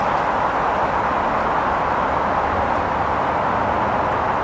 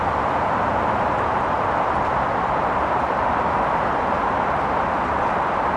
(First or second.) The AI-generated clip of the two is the second